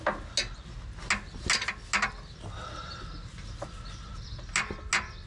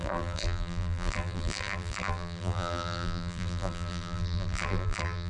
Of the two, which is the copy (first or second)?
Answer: second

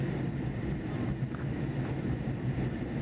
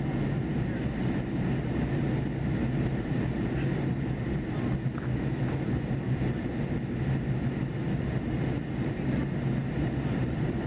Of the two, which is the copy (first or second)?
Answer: first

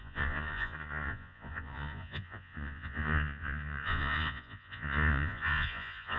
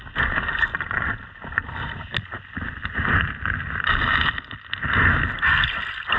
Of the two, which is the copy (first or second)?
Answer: first